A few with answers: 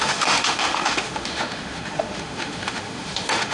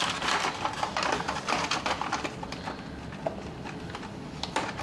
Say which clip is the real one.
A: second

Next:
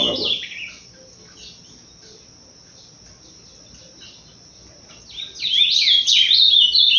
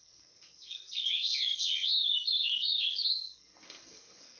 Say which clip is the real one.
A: first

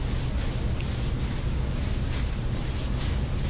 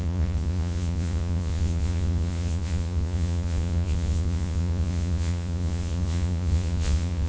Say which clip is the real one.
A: first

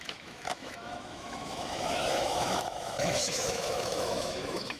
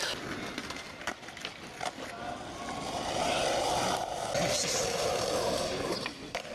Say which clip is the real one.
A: second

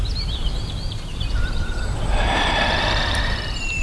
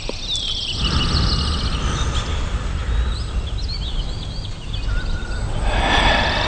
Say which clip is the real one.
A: second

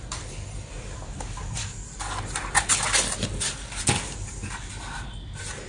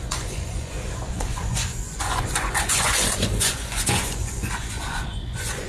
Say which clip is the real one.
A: first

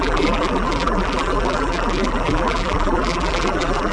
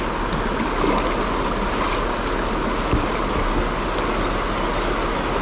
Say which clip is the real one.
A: second